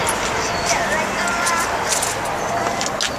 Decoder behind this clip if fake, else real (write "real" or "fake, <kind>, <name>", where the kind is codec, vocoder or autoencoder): real